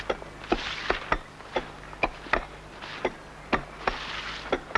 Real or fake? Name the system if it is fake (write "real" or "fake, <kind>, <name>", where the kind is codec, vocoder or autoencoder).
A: real